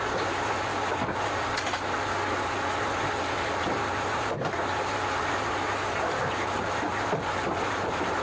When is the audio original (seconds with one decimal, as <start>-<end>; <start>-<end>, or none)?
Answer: 0.7-3.4; 6.9-7.7

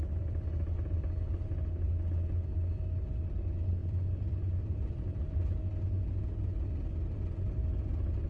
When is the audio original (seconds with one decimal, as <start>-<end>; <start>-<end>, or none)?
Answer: 0.0-3.8; 5.6-8.3